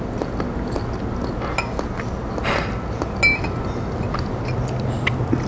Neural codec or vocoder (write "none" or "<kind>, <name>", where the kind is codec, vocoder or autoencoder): none